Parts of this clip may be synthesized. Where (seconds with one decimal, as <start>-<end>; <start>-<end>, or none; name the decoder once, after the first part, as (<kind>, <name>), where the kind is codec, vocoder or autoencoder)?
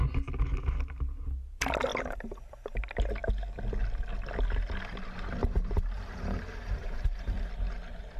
1.9-2.8 (vocoder, BigVGAN v2); 5.4-7.5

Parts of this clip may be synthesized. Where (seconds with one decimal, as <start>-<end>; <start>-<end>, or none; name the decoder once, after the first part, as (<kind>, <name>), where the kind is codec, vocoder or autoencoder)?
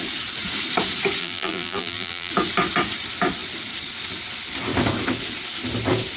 1.2-2.3 (vocoder, BigVGAN v2)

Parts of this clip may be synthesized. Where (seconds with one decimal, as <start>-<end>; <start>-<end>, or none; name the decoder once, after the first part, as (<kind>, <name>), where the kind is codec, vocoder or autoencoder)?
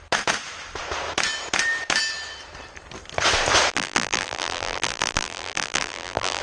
3.7-6.4 (vocoder, BigVGAN v2)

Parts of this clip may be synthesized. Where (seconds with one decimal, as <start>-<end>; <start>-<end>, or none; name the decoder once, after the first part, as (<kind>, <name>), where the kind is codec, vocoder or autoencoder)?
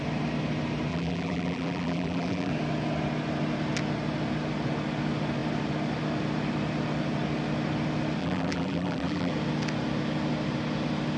0.9-2.5 (vocoder, BigVGAN v2); 8.2-9.3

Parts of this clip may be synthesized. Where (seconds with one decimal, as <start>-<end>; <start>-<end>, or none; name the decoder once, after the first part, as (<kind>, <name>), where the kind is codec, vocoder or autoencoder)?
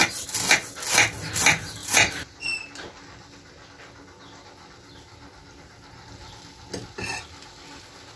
1.8-2.4 (vocoder, BigVGAN v2)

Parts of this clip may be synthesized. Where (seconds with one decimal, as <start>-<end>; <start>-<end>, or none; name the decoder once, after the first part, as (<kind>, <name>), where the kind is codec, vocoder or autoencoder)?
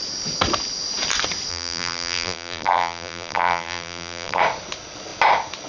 1.5-4.4 (vocoder, BigVGAN v2)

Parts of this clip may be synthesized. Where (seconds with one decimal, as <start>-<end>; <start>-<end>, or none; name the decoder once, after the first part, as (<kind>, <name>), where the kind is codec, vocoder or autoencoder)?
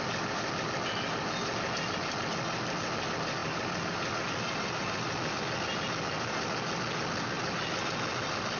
3.4-5.4 (vocoder, BigVGAN v2)